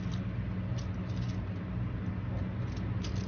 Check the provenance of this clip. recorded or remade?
recorded